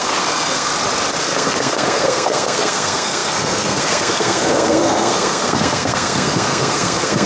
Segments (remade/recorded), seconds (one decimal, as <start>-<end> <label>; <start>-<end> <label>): 0.0-0.7 remade; 0.7-1.2 recorded; 1.2-7.3 remade